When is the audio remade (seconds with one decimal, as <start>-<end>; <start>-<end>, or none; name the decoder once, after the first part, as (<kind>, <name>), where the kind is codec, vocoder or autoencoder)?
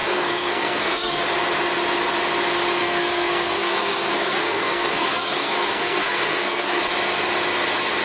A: 0.0-1.2 (codec, SNAC); 2.8-6.8